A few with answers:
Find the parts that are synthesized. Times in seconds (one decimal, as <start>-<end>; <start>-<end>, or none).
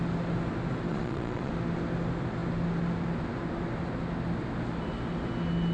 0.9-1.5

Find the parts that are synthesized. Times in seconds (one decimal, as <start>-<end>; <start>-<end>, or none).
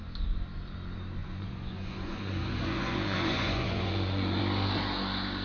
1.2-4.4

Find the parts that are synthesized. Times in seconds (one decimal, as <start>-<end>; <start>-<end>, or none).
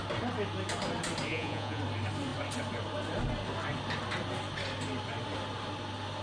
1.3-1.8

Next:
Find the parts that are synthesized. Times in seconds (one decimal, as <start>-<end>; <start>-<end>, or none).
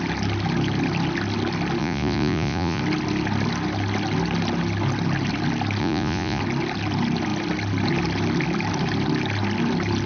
1.8-2.8; 5.8-6.4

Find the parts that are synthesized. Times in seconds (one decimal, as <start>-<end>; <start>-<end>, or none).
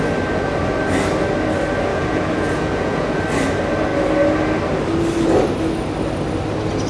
1.9-3.2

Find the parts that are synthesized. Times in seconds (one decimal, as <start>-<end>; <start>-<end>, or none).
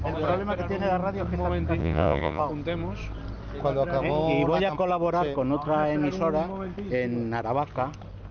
1.8-2.4